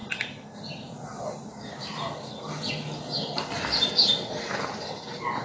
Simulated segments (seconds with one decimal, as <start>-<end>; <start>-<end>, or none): 1.5-1.9